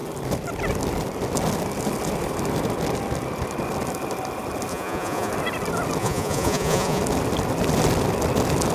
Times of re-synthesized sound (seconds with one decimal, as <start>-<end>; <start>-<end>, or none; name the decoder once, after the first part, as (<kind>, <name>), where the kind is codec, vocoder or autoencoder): 4.7-5.3 (vocoder, Vocos); 6.0-7.0

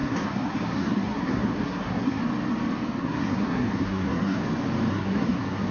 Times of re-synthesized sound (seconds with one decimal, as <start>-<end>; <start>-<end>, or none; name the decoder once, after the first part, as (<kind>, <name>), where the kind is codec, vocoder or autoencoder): 0.0-2.2 (codec, SNAC); 3.0-4.4; 4.9-5.7

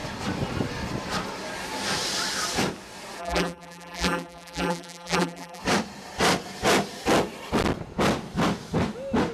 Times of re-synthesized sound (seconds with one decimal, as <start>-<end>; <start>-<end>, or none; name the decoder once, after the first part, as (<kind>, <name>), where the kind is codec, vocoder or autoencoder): 3.2-5.6 (vocoder, BigVGAN v2)

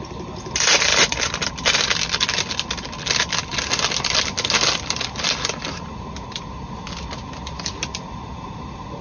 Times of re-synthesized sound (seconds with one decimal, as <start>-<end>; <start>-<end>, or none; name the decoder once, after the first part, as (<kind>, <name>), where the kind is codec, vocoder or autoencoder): 0.9-1.5 (vocoder, BigVGAN v2)